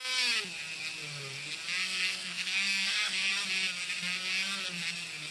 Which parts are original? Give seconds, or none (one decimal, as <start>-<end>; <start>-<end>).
0.0-1.8; 3.3-5.3